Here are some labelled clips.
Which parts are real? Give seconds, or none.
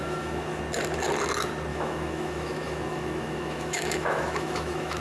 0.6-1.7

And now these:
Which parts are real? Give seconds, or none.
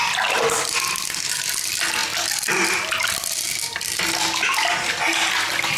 0.0-5.8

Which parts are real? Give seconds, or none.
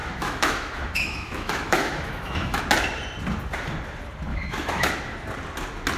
2.6-4.3; 4.9-6.0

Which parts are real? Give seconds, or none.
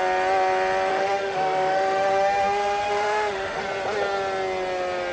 0.0-0.9; 3.6-5.1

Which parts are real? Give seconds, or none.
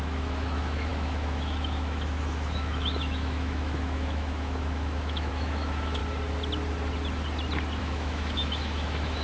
6.0-7.8